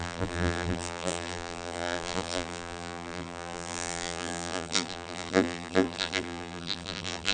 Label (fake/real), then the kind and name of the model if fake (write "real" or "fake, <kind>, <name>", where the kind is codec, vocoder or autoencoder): fake, vocoder, BigVGAN v2